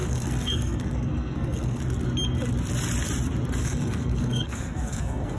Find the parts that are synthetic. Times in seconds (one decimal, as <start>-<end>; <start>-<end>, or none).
0.0-1.8; 3.6-5.4